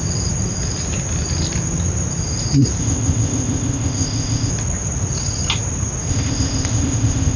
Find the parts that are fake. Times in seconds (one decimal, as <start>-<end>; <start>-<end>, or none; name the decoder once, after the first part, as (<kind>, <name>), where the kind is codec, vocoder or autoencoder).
2.8-4.5 (codec, ZipCodec); 6.1-7.4